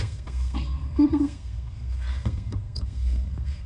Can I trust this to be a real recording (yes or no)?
no